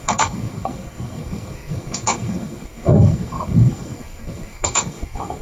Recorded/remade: remade